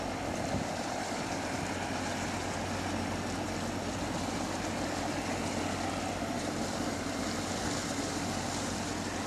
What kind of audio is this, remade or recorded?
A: recorded